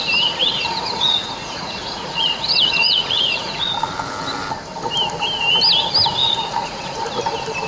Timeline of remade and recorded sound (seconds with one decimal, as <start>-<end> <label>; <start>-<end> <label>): 0.0-0.4 recorded; 0.4-3.6 remade; 3.6-6.2 recorded; 6.2-7.0 remade; 7.0-7.7 recorded